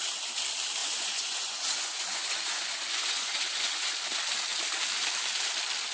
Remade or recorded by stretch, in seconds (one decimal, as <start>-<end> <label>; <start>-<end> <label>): 0.0-0.8 recorded; 0.8-3.9 remade; 3.9-5.9 recorded